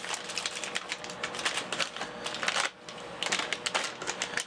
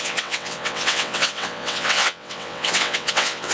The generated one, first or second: second